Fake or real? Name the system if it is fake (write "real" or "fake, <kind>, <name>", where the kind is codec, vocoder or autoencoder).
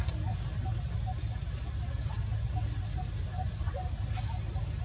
real